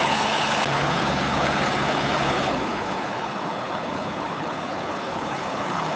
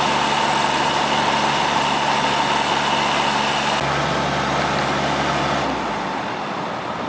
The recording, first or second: second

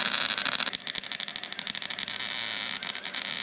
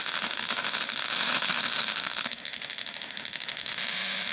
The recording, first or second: first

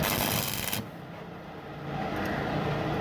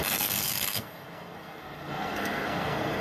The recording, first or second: first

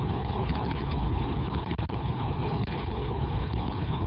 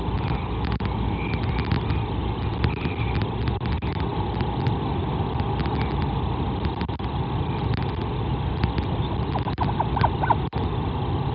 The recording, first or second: second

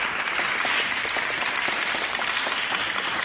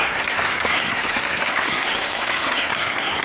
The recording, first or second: first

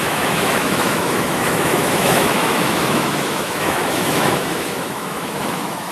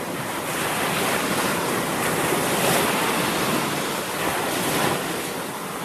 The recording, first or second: second